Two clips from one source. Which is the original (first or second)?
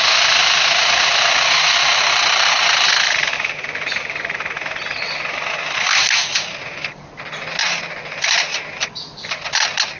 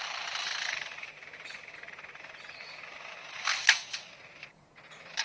first